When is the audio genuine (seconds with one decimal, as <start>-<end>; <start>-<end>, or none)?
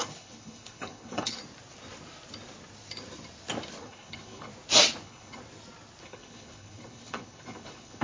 1.4-3.8; 4.5-5.0; 5.4-6.0